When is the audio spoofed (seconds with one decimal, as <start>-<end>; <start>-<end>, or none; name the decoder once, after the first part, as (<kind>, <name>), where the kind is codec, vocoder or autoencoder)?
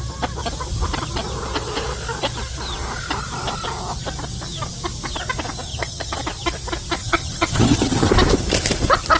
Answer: 5.7-6.2 (vocoder, HiFi-GAN); 7.0-8.1